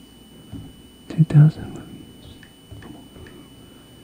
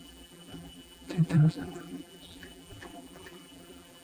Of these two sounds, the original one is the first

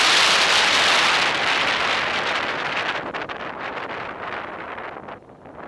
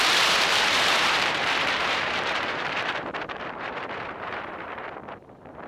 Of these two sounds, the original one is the first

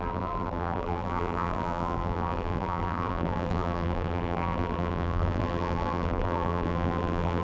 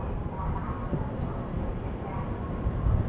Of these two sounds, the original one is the second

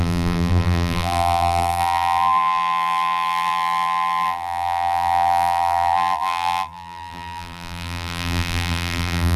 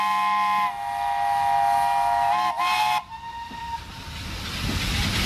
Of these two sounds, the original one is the second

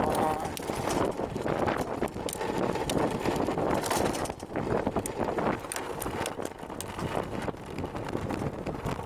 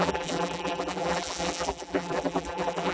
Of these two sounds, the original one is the first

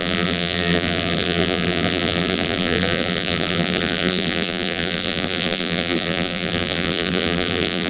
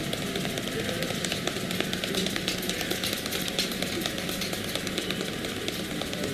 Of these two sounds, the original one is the second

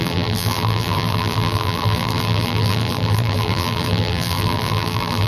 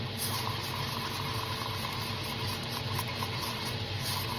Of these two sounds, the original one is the second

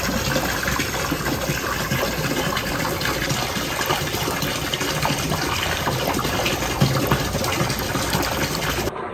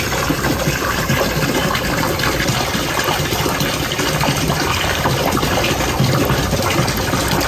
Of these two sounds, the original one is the first